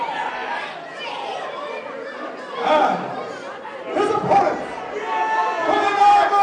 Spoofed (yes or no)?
no